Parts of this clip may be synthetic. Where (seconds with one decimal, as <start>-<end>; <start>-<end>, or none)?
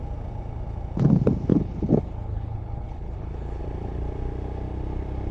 1.5-3.6